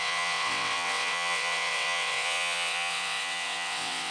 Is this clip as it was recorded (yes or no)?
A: no